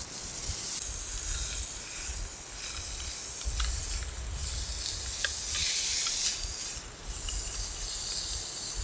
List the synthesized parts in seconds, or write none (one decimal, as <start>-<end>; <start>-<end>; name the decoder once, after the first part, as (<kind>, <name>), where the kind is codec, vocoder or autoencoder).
none